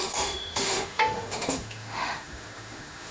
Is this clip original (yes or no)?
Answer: no